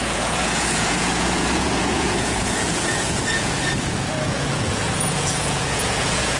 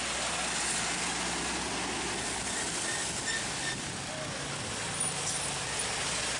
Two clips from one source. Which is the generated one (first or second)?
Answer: first